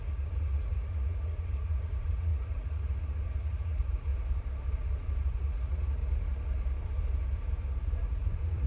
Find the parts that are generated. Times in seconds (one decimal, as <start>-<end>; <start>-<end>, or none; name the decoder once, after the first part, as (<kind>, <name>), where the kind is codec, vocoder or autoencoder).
0.0-4.1 (vocoder, Vocos); 5.2-6.0; 8.0-8.7